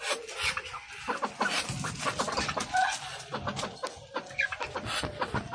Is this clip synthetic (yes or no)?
yes